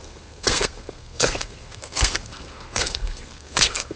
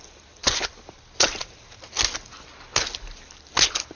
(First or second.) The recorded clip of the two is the second